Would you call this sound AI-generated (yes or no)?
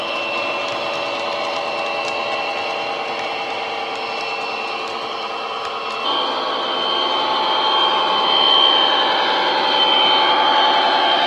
no